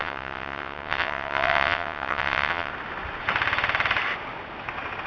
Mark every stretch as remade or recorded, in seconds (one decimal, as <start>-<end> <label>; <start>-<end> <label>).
0.0-2.7 remade; 2.7-5.1 recorded